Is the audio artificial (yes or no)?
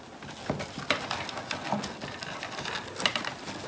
no